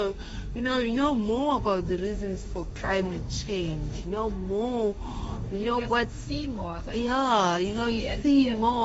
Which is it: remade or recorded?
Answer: remade